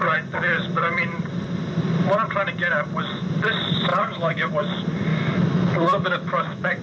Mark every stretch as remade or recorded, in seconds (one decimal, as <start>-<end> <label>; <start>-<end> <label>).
0.0-3.9 recorded; 3.9-4.5 remade; 4.5-5.1 recorded; 5.1-6.8 remade